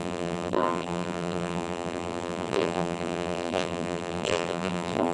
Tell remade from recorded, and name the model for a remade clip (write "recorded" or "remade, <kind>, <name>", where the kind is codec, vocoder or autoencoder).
remade, vocoder, BigVGAN v2